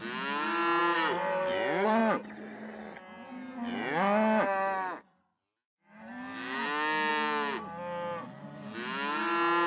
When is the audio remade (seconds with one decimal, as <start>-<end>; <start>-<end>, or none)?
none